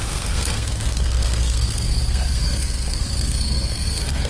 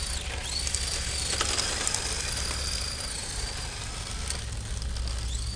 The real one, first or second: second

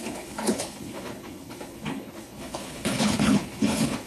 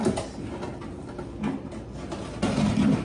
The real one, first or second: second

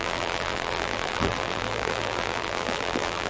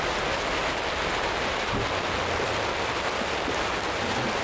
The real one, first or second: second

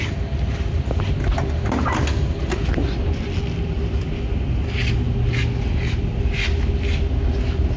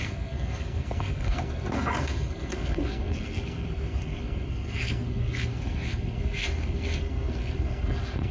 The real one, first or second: first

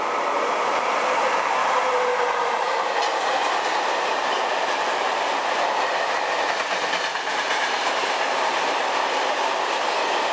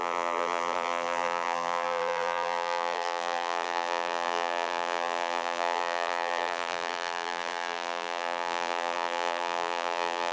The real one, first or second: first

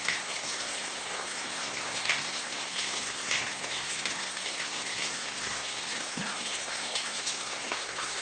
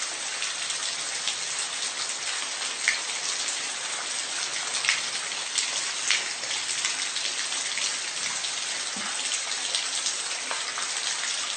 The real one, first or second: second